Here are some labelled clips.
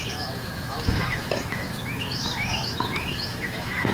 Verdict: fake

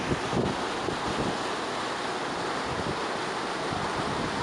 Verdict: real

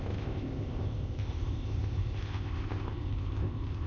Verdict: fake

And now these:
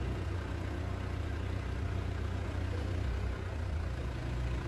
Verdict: fake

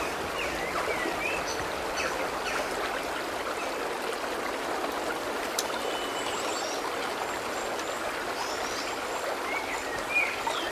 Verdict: real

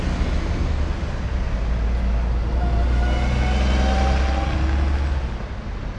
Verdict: real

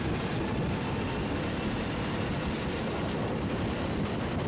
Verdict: real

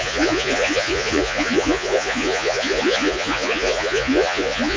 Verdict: fake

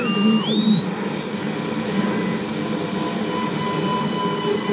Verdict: real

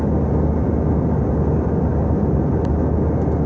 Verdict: real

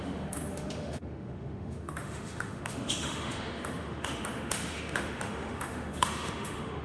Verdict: fake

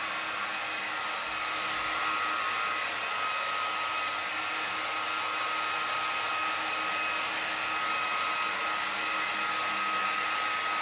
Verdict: real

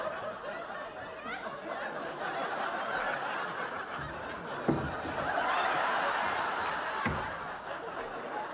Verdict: real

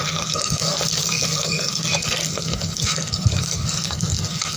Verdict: fake